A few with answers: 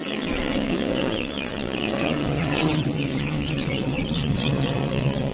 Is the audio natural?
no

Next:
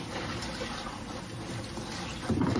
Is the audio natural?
yes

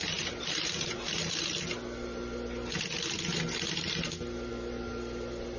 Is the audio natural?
yes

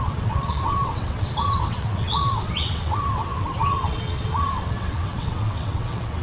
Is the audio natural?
no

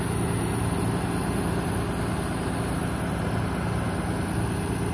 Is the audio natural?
yes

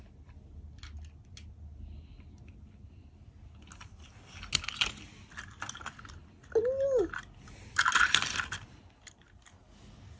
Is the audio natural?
yes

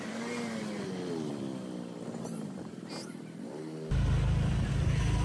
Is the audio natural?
yes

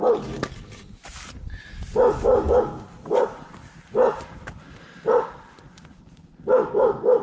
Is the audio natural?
yes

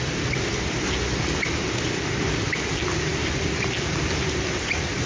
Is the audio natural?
yes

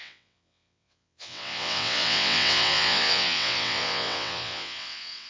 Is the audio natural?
no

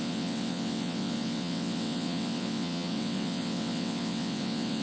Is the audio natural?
no